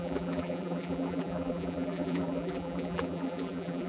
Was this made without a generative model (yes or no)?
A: no